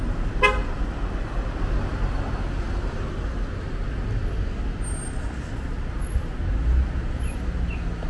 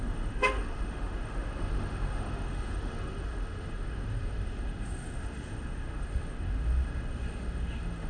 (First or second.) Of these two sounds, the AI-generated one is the second